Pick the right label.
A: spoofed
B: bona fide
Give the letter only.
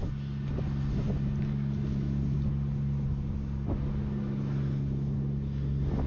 B